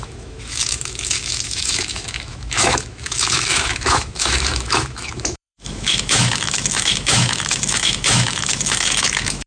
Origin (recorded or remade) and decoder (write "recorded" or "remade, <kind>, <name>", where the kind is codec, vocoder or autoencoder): remade, autoencoder, DAC-VAE